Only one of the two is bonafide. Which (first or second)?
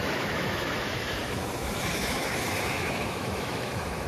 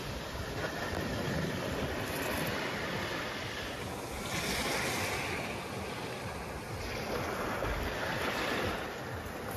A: second